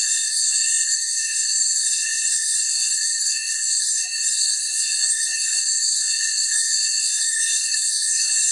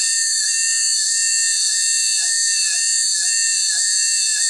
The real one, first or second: second